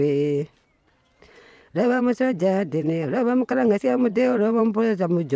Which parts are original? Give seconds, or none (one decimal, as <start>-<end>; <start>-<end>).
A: 0.0-1.4; 4.6-5.4